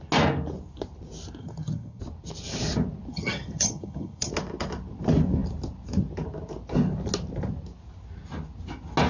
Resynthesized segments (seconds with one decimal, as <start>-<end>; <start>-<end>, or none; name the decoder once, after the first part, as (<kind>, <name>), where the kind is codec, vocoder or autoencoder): 1.4-2.0 (vocoder, HiFi-GAN); 3.1-4.3